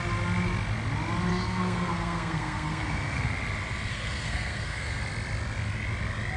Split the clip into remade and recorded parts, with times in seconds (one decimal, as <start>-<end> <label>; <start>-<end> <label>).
0.0-1.3 recorded; 1.3-3.3 remade; 3.3-3.9 recorded; 3.9-5.0 remade; 5.0-6.4 recorded